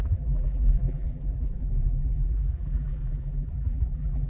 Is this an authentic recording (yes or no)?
no